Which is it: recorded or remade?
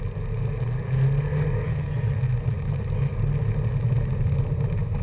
recorded